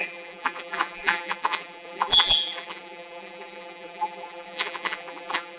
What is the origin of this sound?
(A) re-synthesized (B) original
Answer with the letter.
A